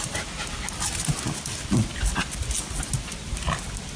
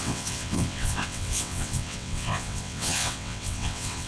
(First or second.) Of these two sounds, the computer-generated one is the second